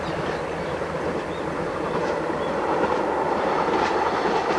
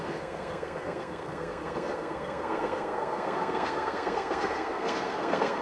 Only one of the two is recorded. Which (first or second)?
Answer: first